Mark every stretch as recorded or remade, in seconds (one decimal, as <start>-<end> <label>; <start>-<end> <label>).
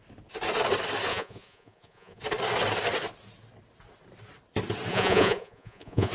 0.0-1.1 recorded; 1.1-2.2 remade; 2.2-4.9 recorded; 4.9-6.1 remade